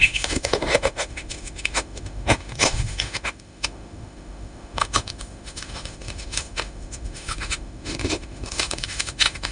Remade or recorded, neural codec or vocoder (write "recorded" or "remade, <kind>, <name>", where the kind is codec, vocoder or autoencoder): remade, autoencoder, DAC-VAE